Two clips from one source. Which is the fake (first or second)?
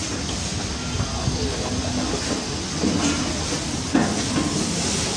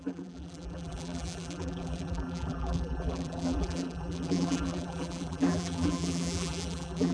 second